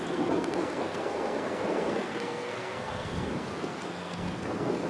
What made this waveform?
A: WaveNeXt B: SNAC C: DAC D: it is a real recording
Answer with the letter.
B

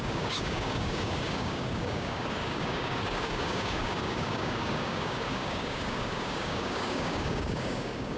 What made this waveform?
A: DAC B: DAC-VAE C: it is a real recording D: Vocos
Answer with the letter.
A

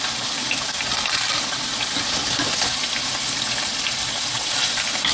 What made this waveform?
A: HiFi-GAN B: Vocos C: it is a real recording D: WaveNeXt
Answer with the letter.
C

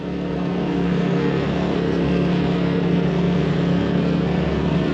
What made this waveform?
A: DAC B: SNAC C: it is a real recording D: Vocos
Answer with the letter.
B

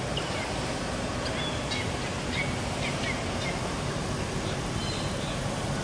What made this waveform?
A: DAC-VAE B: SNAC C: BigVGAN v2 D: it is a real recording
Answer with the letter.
D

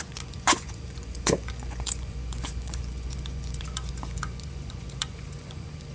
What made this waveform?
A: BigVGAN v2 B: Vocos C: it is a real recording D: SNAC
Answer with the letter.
B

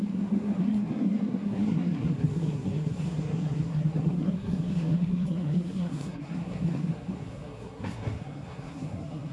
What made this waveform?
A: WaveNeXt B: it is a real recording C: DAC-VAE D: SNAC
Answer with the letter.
D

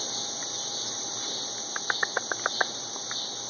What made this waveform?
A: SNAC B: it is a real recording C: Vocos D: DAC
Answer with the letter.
B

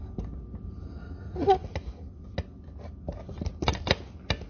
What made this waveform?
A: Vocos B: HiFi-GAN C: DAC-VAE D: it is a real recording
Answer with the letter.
D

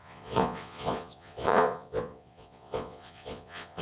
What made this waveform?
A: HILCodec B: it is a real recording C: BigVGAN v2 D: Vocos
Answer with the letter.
D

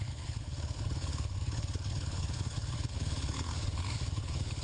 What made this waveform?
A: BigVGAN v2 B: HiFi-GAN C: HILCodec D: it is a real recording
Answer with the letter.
C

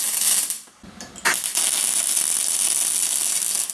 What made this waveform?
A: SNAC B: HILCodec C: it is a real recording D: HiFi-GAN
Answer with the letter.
C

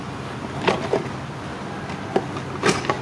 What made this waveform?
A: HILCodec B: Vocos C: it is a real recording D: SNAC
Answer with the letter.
C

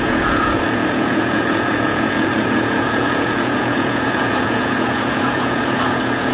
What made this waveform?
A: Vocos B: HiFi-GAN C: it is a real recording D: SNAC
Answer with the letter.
A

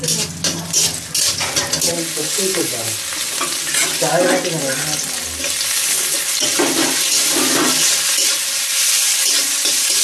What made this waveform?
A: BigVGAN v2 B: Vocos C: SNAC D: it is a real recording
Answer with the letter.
D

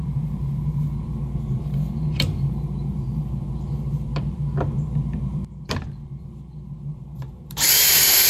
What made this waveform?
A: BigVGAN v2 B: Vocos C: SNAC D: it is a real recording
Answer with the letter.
A